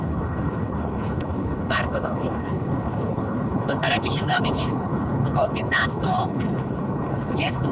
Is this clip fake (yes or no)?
yes